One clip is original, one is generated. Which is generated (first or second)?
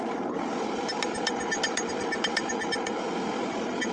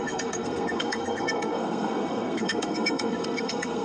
second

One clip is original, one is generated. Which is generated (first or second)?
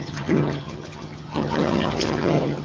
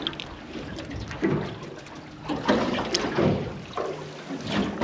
first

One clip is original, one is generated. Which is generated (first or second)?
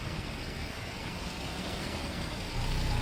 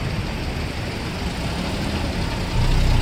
first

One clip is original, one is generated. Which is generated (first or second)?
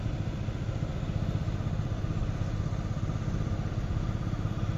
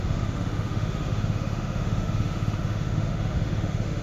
second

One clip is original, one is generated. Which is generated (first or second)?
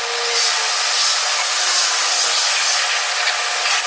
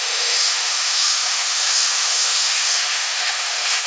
second